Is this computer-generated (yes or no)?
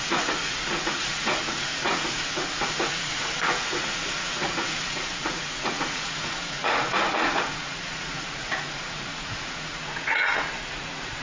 yes